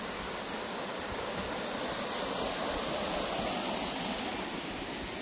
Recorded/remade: recorded